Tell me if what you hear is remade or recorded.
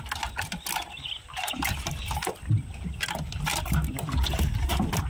recorded